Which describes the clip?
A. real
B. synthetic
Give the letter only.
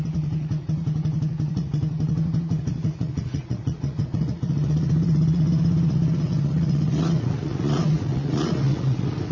B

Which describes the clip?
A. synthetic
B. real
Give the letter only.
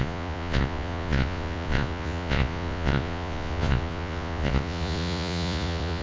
A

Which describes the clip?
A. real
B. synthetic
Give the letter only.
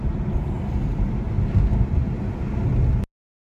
A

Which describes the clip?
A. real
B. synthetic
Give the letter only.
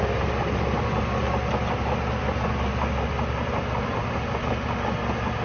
A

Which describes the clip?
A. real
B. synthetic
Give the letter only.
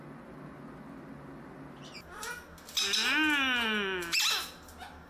A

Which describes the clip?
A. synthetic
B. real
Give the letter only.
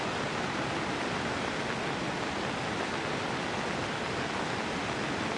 B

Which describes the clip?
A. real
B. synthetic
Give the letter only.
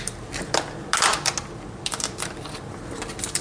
A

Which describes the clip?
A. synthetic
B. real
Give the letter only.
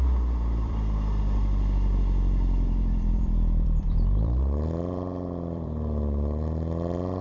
A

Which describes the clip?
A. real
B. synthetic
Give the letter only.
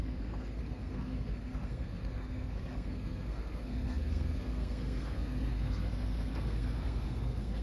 B